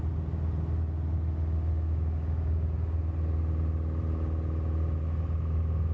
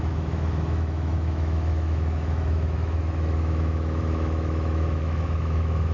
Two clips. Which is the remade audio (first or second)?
second